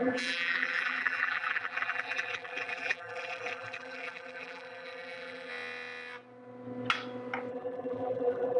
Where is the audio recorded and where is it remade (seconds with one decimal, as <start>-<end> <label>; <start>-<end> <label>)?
0.0-5.5 remade; 5.5-7.5 recorded; 7.5-8.6 remade